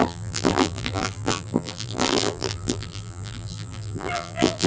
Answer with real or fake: fake